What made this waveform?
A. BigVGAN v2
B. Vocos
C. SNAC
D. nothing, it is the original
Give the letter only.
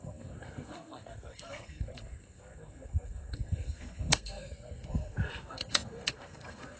C